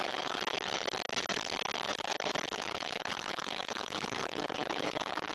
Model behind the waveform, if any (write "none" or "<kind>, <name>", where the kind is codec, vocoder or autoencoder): codec, HILCodec